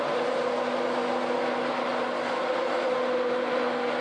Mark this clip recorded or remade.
recorded